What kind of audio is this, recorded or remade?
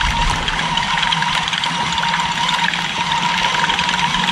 recorded